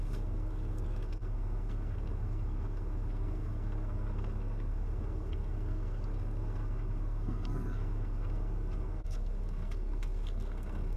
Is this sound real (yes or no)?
no